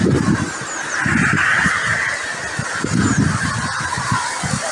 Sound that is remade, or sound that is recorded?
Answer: recorded